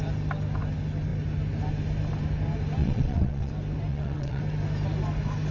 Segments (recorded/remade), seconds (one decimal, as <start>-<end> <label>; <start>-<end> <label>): 0.0-2.8 recorded; 2.8-3.5 remade; 3.5-3.9 recorded; 3.9-4.4 remade; 4.4-5.5 recorded